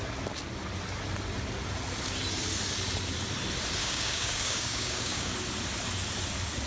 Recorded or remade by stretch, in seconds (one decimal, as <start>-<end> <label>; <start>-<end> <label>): 0.0-3.8 recorded; 3.8-5.3 remade; 5.3-6.7 recorded